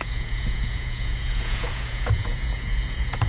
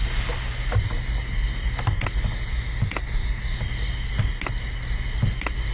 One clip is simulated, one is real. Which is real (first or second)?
second